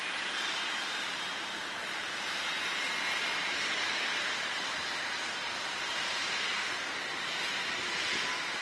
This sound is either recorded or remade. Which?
remade